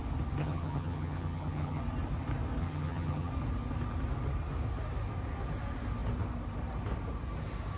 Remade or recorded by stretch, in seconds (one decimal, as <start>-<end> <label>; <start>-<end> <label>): 0.0-0.4 recorded; 0.4-1.8 remade; 1.8-2.6 recorded; 2.6-3.3 remade; 3.3-7.8 recorded